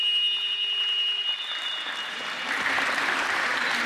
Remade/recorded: recorded